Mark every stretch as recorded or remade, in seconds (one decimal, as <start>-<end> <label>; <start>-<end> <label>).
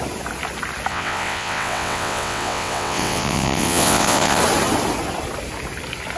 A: 0.0-0.9 recorded; 0.9-4.4 remade; 4.4-6.2 recorded